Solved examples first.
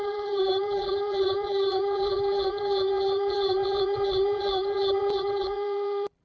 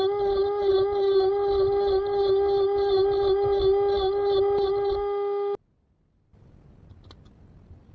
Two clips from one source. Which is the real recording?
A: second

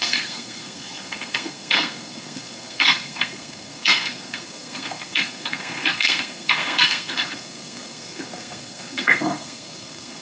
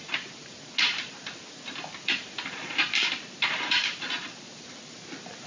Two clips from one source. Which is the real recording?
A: second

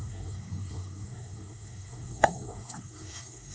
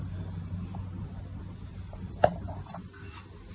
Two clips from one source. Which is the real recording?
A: second